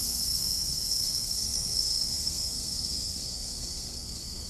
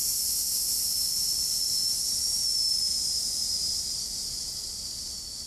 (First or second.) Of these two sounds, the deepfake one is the first